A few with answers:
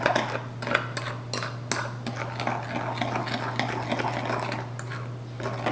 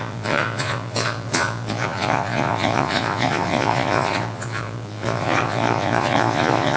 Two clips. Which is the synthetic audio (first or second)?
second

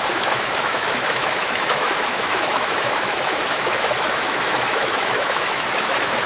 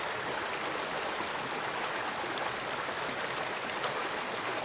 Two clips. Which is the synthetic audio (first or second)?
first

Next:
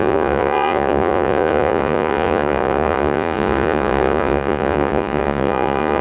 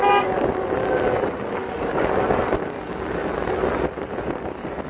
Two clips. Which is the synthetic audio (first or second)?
first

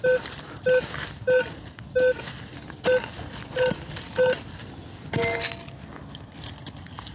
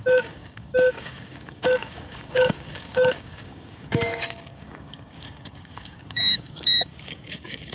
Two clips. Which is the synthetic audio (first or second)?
second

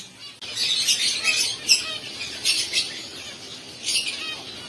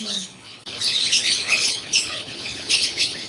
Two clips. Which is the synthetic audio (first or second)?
second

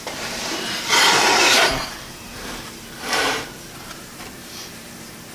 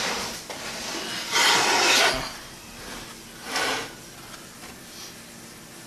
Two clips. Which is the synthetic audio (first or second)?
first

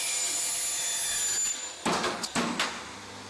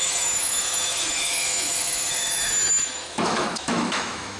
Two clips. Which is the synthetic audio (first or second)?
second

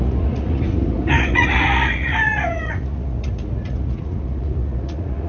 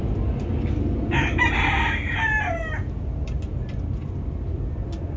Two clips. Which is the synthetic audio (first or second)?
first